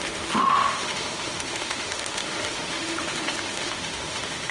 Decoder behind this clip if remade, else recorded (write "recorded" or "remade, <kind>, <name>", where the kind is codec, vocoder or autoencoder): remade, autoencoder, DAC-VAE